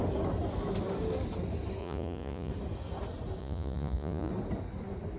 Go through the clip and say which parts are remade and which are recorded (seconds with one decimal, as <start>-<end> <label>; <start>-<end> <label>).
0.0-1.8 recorded; 1.8-2.5 remade; 2.5-3.4 recorded; 3.4-4.3 remade; 4.3-5.2 recorded